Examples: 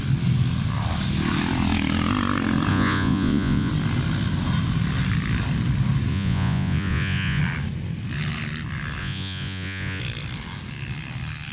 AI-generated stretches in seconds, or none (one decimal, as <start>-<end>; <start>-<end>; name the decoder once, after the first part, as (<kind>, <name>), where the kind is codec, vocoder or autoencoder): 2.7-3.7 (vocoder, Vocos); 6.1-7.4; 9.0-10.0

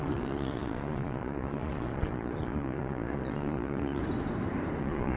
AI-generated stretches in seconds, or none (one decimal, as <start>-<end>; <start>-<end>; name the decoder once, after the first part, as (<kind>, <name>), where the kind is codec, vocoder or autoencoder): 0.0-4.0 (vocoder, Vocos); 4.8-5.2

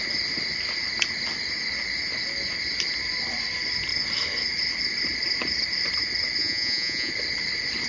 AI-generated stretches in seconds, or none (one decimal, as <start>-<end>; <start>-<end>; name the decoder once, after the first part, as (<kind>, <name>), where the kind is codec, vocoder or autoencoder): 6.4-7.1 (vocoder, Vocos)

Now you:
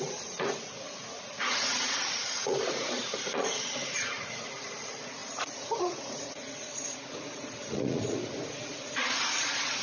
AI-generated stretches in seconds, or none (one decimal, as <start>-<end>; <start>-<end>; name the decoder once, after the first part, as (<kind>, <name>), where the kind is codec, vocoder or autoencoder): 0.0-9.8 (vocoder, Vocos)